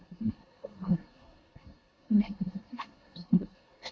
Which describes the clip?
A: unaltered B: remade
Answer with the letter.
B